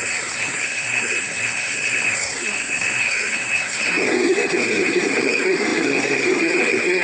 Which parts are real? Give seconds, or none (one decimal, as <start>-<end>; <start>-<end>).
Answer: none